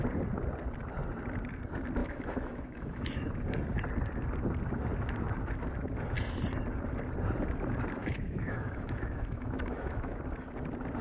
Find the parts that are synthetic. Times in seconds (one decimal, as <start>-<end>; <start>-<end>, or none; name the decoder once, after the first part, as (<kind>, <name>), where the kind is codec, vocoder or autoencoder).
2.0-3.3 (autoencoder, DAC-VAE); 8.0-10.2